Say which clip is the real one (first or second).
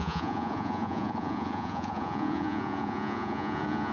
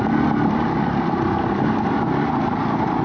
second